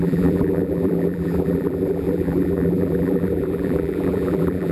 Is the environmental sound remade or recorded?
remade